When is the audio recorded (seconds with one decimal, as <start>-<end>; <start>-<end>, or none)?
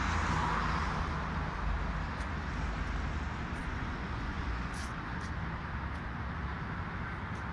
0.0-3.6; 5.3-7.5